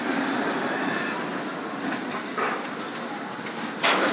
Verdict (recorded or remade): recorded